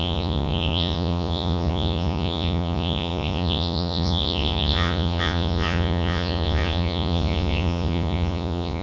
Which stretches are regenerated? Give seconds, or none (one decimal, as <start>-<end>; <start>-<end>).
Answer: 0.0-8.8